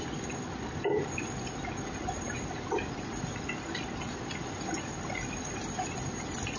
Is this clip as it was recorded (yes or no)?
yes